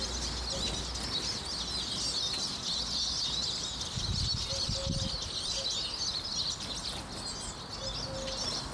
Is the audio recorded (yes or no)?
yes